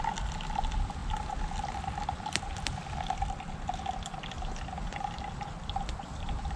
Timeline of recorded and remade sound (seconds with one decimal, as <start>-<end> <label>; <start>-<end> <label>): 0.0-6.6 recorded